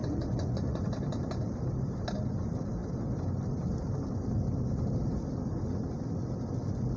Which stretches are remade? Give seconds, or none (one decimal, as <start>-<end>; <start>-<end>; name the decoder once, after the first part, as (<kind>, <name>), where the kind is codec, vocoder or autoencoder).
0.0-0.8 (vocoder, Vocos)